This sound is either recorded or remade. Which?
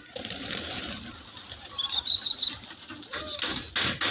recorded